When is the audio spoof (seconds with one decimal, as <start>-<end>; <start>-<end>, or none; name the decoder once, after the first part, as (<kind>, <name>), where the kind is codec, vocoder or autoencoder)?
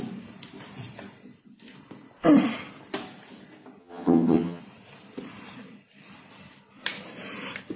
3.8-4.6 (vocoder, HiFi-GAN)